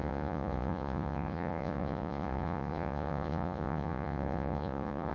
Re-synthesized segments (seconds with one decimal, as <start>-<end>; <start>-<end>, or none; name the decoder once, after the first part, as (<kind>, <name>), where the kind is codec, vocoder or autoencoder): 0.0-5.1 (vocoder, Vocos)

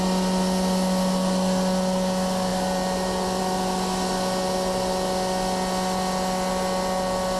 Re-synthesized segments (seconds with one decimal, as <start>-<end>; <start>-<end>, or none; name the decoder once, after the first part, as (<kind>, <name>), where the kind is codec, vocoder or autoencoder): 2.5-3.4 (vocoder, BigVGAN v2)

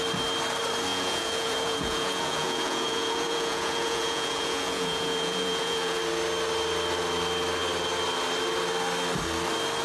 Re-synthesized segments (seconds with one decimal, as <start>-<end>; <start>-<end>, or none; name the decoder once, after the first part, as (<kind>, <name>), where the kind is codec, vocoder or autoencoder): 0.9-6.0 (vocoder, Vocos)

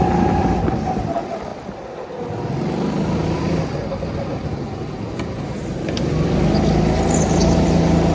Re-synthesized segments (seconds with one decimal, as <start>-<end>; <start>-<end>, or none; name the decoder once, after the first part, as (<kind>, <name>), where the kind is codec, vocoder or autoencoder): none

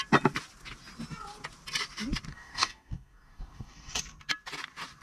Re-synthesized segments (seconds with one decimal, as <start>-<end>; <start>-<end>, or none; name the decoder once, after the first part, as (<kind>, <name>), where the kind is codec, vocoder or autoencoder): 2.3-4.0 (codec, DAC)